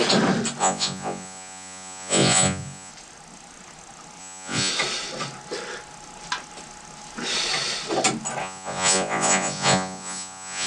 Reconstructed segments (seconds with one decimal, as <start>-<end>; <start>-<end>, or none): 0.6-2.9; 4.2-4.7; 8.4-10.7